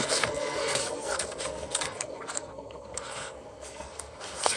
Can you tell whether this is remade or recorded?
remade